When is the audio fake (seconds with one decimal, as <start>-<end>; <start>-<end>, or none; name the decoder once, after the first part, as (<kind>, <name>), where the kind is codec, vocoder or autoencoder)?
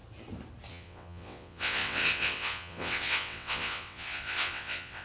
0.7-5.0 (vocoder, WaveNeXt)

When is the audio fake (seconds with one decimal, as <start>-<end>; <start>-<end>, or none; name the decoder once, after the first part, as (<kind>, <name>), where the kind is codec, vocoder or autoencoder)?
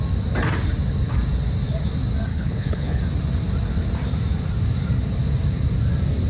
2.3-3.0 (codec, HILCodec)